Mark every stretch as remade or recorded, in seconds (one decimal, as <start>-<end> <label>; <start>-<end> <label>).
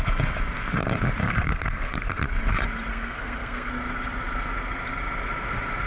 0.0-1.2 recorded; 1.2-2.2 remade; 2.2-2.9 recorded; 2.9-3.7 remade; 3.7-5.9 recorded